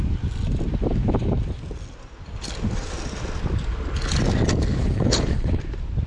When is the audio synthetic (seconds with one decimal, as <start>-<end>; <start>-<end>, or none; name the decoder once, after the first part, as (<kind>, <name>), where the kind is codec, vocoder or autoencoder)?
4.8-5.6 (codec, HILCodec)